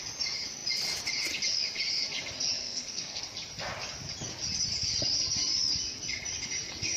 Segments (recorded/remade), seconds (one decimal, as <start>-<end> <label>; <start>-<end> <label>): 0.0-2.6 recorded; 2.6-3.2 remade; 3.2-7.0 recorded